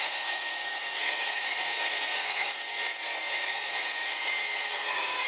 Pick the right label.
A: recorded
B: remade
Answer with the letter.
B